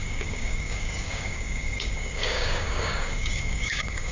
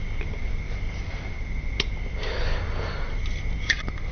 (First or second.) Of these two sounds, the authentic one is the second